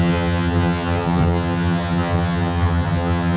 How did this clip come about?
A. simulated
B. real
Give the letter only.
A